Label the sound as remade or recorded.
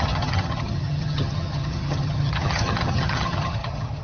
remade